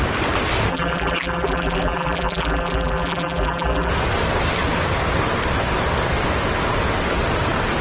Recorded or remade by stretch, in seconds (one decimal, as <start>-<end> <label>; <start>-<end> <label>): 0.0-0.7 recorded; 0.7-3.9 remade; 3.9-7.8 recorded

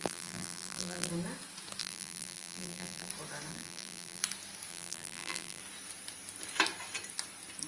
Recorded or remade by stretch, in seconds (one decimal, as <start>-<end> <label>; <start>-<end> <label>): 0.0-1.1 remade; 1.1-1.8 recorded; 1.8-3.1 remade; 3.1-3.5 recorded; 3.5-4.2 remade; 4.2-4.7 recorded; 4.7-5.6 remade; 5.6-7.7 recorded

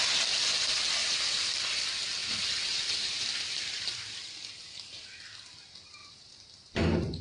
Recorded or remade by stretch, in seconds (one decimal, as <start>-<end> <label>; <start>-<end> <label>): 0.0-1.0 recorded; 1.0-1.6 remade; 1.6-2.2 recorded; 2.2-4.0 remade; 4.0-6.0 recorded; 6.0-7.2 remade

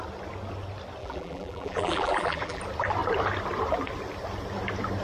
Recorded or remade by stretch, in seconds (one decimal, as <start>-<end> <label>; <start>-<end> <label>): 0.0-1.0 recorded; 1.0-2.6 remade; 2.6-5.0 recorded